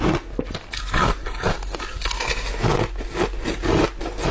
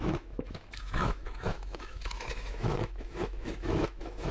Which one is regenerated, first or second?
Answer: second